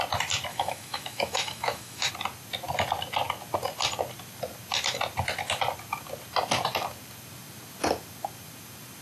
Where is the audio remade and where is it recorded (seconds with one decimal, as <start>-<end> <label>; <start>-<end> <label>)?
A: 0.0-0.5 recorded; 0.5-2.1 remade; 2.1-9.0 recorded